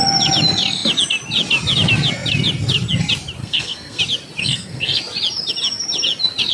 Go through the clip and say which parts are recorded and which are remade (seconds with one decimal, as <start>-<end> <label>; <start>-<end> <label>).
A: 0.0-3.4 recorded; 3.4-4.0 remade; 4.0-4.4 recorded; 4.4-5.0 remade; 5.0-6.5 recorded